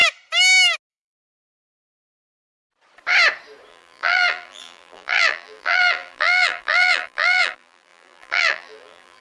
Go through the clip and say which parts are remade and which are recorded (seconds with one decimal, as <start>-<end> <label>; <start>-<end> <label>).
0.0-0.9 recorded; 0.9-2.0 remade; 2.0-3.7 recorded; 3.7-9.2 remade